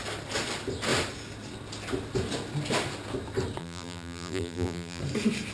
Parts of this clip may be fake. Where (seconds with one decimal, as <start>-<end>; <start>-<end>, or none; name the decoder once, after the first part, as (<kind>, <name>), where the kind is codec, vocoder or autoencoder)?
3.6-5.0 (vocoder, BigVGAN v2)